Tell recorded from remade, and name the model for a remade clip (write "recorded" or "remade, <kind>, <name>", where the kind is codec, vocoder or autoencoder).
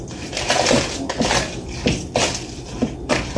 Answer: recorded